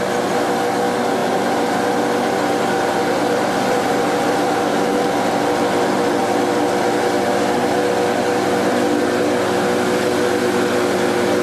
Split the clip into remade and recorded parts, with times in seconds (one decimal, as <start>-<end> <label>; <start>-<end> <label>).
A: 0.0-1.2 recorded; 1.2-1.7 remade; 1.7-3.2 recorded; 3.2-6.4 remade; 6.4-11.4 recorded